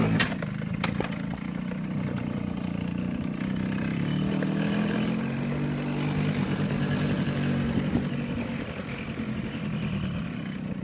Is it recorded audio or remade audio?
recorded